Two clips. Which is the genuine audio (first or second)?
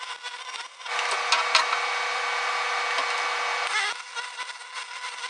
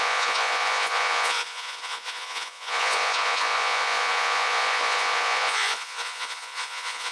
first